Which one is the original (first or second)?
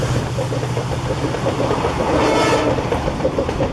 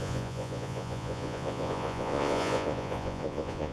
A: first